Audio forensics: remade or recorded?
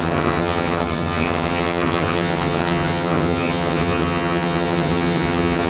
remade